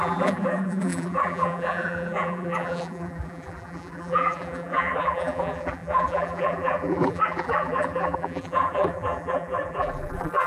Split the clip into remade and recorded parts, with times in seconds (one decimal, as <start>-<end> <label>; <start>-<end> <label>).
0.0-10.5 remade